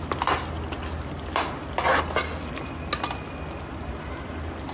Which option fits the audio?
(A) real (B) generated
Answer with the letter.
A